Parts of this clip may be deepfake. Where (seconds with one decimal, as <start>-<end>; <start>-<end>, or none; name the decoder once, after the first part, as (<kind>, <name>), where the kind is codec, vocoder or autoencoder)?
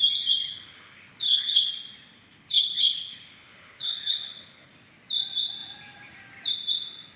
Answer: 0.4-1.7 (codec, HILCodec); 2.1-4.7